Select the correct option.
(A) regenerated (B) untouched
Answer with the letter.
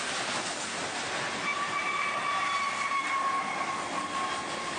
B